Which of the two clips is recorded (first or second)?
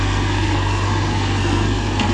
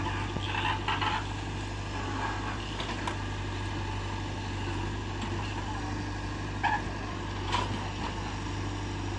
second